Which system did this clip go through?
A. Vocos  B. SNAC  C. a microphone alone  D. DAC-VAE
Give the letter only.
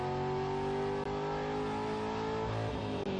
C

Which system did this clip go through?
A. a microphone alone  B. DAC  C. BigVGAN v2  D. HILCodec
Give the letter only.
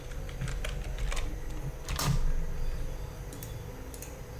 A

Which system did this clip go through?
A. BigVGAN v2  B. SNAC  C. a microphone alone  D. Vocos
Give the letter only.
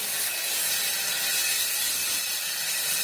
C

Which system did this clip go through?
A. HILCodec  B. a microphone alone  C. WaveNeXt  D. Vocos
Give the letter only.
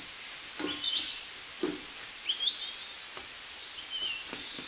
B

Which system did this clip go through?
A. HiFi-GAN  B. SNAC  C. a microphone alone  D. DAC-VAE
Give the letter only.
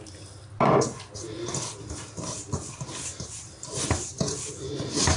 C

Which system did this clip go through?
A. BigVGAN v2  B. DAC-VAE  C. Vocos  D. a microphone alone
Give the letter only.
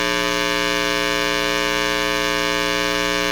D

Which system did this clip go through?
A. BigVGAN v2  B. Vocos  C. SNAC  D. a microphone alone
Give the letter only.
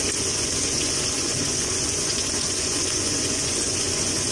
B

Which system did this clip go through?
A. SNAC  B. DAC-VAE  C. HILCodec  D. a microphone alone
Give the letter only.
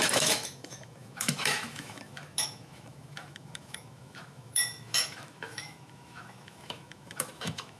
B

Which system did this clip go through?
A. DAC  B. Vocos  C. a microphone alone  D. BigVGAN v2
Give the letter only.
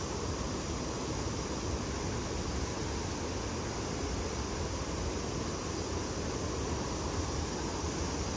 C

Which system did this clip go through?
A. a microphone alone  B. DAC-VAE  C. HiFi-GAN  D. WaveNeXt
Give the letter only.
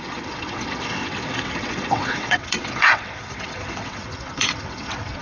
D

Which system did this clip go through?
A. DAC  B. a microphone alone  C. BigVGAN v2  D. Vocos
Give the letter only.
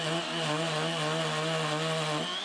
B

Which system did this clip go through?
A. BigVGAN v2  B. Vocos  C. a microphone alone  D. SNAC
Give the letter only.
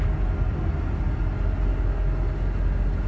C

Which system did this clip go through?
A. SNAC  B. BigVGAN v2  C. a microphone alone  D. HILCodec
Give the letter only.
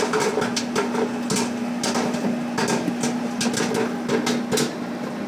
C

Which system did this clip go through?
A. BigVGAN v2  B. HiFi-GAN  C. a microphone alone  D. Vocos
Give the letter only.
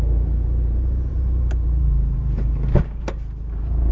A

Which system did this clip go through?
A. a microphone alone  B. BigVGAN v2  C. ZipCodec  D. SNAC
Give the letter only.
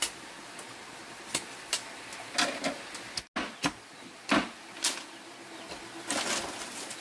A